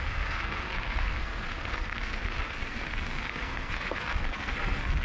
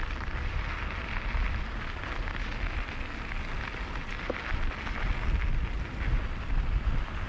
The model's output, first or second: first